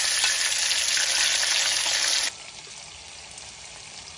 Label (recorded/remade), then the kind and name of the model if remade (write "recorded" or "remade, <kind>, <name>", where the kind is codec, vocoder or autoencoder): recorded